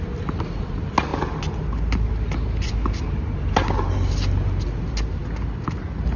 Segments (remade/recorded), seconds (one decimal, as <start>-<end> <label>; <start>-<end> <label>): 0.0-6.2 recorded